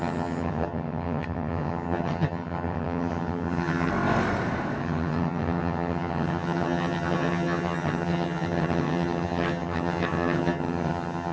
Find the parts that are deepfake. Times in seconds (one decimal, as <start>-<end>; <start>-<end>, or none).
0.0-3.9; 4.8-11.3